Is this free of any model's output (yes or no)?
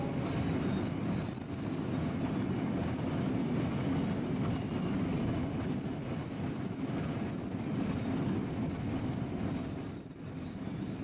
yes